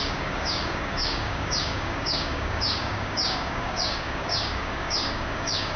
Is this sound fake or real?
fake